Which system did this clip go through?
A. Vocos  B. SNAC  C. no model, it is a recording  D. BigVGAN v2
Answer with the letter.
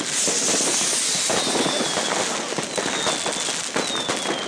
C